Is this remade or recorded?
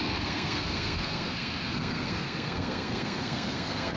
remade